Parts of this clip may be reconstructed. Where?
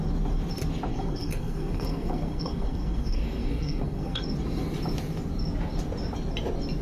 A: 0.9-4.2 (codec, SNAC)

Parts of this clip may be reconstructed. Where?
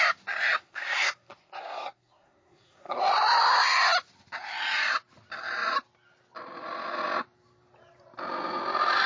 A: 0.6-3.0 (codec, SNAC)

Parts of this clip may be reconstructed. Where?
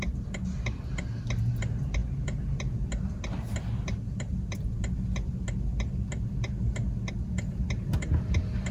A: none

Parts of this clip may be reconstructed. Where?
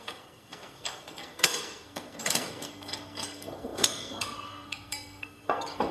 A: 0.0-5.9 (codec, SNAC)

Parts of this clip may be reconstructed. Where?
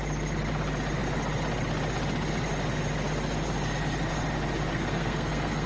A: 4.7-5.7 (codec, SNAC)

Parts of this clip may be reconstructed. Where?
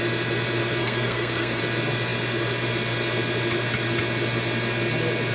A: 0.8-1.6 (codec, SNAC)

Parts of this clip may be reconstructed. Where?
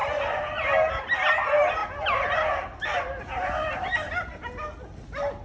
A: none